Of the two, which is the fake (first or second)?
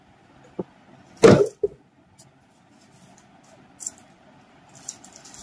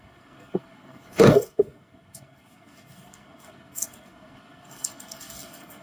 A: second